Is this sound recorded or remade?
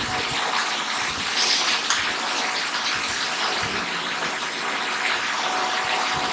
recorded